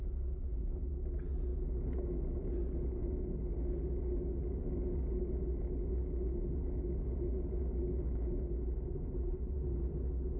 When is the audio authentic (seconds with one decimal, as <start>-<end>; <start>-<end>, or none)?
0.0-10.4

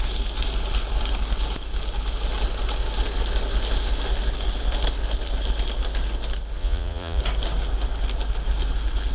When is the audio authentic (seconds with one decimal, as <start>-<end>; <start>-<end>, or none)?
0.0-6.6; 7.2-9.1

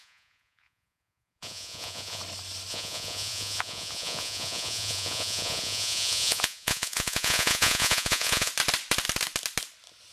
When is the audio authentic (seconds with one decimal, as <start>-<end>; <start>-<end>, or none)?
2.2-2.7; 8.5-10.1